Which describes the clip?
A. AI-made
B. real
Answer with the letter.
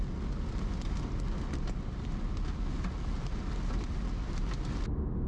B